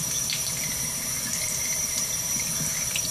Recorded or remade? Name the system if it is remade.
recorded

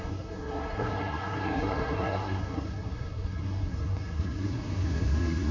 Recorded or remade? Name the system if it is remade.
remade, codec, SNAC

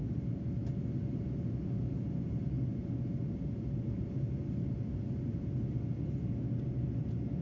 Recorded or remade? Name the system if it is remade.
recorded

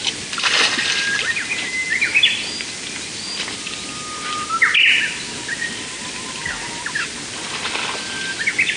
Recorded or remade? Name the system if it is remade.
recorded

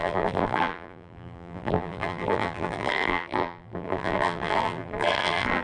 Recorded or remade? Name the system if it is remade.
remade, vocoder, BigVGAN v2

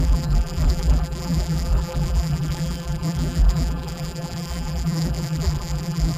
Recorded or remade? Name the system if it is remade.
remade, vocoder, BigVGAN v2